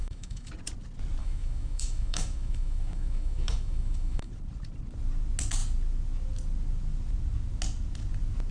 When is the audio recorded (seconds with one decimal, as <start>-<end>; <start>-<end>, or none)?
0.5-1.2; 4.3-8.5